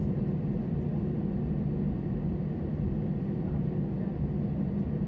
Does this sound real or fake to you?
real